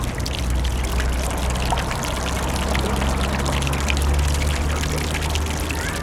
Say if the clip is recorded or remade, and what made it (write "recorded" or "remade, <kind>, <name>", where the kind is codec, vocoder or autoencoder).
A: recorded